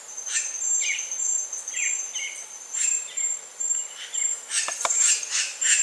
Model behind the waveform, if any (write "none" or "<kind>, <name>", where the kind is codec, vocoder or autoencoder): none